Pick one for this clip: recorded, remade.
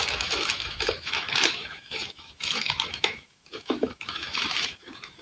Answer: remade